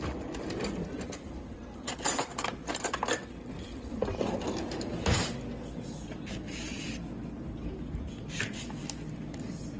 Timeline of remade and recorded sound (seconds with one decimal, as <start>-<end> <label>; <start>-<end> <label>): 0.0-2.3 recorded; 2.3-3.3 remade; 3.3-9.8 recorded